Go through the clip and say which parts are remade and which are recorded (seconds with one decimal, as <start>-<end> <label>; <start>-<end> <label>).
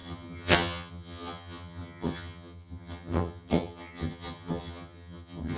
0.0-5.6 remade